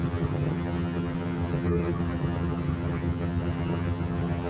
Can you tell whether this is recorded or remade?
remade